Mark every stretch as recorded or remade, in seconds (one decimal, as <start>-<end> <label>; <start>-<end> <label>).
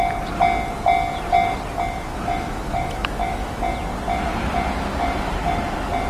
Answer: 0.0-2.1 recorded; 2.1-3.6 remade; 3.6-6.1 recorded